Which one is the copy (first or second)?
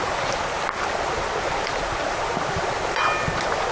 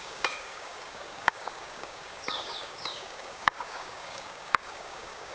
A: second